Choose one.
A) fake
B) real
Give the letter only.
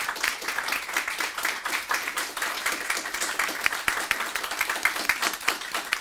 A